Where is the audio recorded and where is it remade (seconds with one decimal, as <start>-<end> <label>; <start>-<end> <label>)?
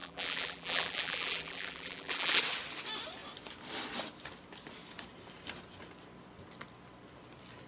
0.0-2.4 remade; 2.4-7.7 recorded